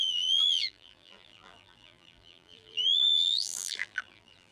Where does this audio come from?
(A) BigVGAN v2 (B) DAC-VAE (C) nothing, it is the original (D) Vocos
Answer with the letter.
A